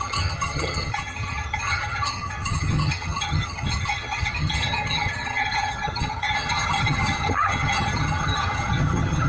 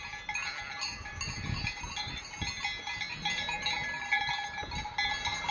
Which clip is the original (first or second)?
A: second